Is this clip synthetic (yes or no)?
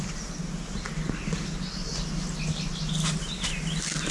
no